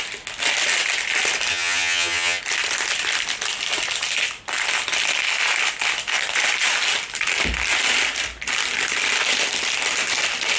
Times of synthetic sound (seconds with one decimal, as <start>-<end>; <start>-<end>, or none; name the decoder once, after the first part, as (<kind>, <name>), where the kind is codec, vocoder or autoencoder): 1.5-2.4 (vocoder, HiFi-GAN)